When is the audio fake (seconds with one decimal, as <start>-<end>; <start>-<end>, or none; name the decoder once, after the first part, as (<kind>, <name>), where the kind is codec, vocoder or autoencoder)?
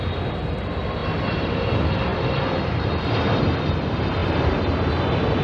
none